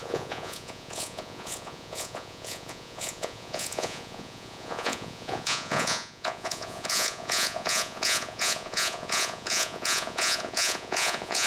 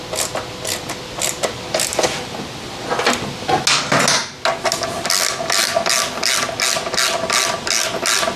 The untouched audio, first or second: second